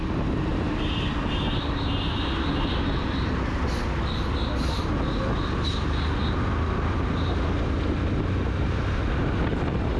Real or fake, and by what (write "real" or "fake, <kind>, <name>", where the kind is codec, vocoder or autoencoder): real